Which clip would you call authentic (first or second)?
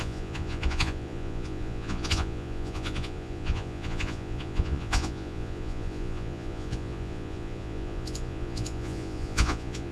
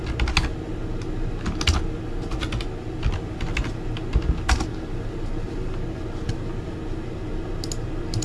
second